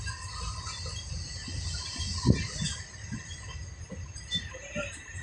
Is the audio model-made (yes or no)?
no